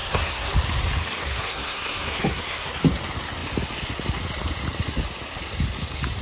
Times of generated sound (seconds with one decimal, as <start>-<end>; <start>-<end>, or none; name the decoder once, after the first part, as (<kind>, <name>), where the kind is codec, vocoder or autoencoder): 0.0-0.5 (codec, SNAC); 1.2-2.7